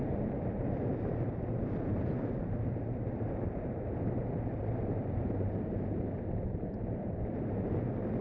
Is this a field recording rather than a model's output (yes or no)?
no